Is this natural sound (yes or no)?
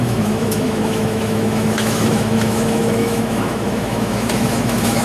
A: no